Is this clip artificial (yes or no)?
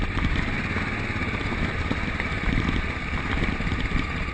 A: no